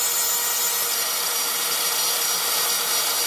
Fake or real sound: real